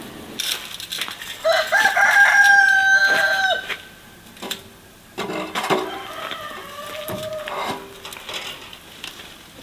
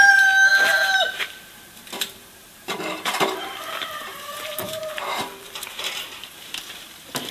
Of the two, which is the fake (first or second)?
second